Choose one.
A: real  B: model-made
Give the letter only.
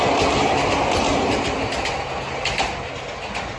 A